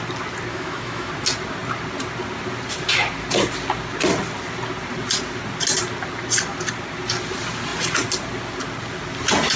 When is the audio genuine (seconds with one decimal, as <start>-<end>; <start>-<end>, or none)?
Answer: 0.0-0.5; 1.1-9.6